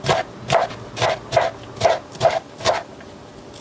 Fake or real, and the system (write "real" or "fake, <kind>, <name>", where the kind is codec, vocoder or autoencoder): real